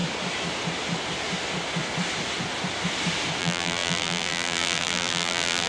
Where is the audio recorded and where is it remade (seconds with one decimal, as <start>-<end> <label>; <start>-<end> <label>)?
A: 0.0-3.4 recorded; 3.4-5.7 remade